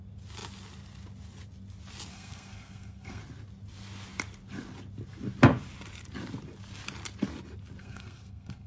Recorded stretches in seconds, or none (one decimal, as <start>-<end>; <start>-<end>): 0.0-2.1; 3.2-7.8